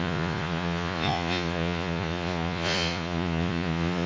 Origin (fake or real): fake